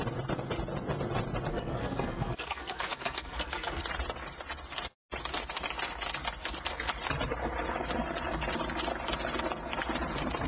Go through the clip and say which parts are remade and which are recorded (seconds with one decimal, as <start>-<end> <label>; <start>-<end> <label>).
0.0-1.5 recorded; 1.5-3.8 remade; 3.8-10.5 recorded

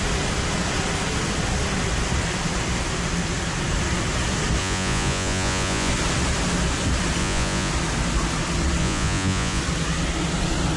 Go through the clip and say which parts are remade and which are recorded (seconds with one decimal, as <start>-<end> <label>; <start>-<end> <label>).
0.0-4.6 recorded; 4.6-5.9 remade; 5.9-7.2 recorded; 7.2-7.7 remade; 7.7-8.8 recorded; 8.8-9.6 remade; 9.6-10.8 recorded

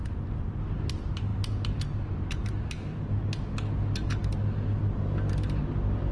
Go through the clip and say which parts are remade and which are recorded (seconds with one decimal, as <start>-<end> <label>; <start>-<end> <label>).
0.0-6.1 recorded

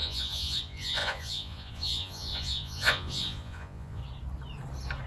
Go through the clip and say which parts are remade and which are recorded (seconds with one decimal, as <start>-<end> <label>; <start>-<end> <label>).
0.0-4.0 remade; 4.0-5.1 recorded

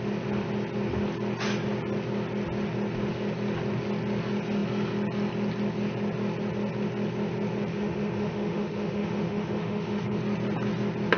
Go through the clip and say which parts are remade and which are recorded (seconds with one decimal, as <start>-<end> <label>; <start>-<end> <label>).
0.0-7.7 recorded; 7.7-10.2 remade; 10.2-11.2 recorded

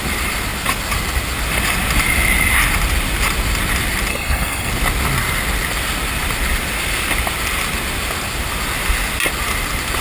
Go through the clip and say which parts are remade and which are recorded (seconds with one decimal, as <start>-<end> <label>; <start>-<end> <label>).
0.0-4.1 recorded; 4.1-4.7 remade; 4.7-10.0 recorded

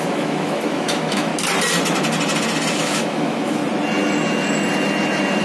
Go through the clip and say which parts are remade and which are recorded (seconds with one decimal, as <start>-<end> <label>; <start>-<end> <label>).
0.0-1.3 remade; 1.3-2.7 recorded; 2.7-3.6 remade; 3.6-5.4 recorded

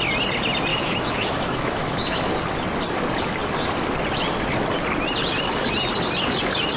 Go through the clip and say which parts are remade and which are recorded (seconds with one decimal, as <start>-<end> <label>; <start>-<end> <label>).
0.0-0.7 recorded; 0.7-2.3 remade; 2.3-6.8 recorded